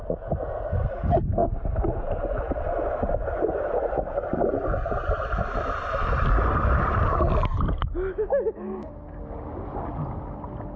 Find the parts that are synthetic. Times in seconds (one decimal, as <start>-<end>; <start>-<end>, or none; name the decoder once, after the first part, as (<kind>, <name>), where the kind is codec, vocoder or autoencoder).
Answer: none